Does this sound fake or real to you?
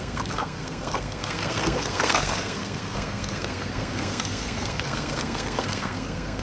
fake